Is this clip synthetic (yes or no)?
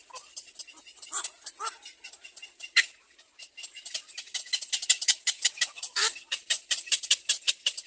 no